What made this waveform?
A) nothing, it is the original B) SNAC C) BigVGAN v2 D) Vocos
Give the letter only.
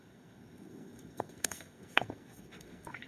B